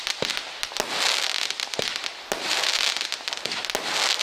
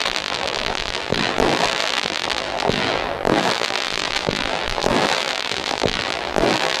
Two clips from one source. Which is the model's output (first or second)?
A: second